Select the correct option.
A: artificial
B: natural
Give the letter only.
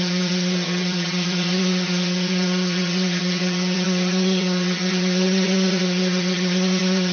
A